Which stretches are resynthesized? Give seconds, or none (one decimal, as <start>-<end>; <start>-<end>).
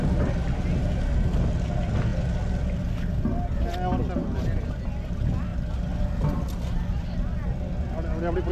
none